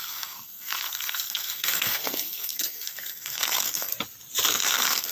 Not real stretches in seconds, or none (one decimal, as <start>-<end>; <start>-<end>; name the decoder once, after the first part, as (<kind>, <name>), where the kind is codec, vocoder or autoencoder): 0.0-3.9 (codec, SNAC); 4.5-5.1